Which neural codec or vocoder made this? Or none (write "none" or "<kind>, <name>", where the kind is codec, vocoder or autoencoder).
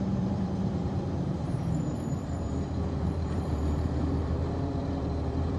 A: vocoder, BigVGAN v2